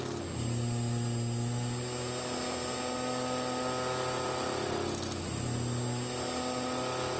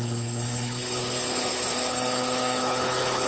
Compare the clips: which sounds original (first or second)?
first